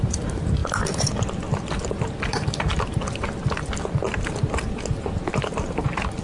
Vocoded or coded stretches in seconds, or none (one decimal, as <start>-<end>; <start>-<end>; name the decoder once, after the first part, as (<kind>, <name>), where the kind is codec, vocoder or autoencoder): 0.0-0.6 (vocoder, BigVGAN v2); 2.3-2.7; 5.3-6.2